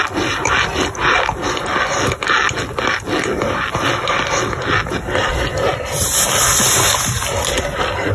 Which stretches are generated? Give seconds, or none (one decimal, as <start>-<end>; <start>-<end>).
none